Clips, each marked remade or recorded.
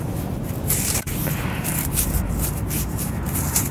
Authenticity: remade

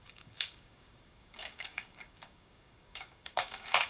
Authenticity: remade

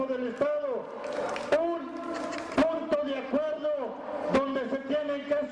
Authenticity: recorded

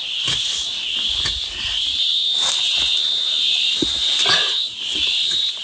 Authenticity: recorded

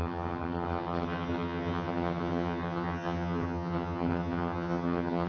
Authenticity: remade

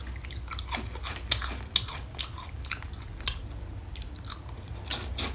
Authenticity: recorded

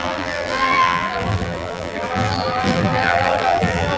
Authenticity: remade